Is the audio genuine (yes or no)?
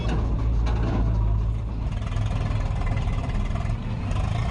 yes